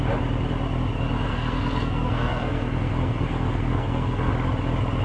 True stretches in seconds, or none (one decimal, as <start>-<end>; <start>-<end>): 0.0-1.3; 4.3-5.0